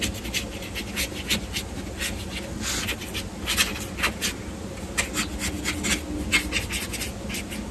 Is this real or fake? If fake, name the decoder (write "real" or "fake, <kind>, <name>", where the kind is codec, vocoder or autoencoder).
real